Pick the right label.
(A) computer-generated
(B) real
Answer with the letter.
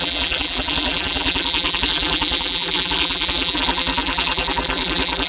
A